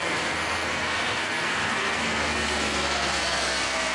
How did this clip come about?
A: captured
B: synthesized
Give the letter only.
B